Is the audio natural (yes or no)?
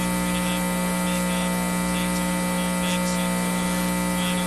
yes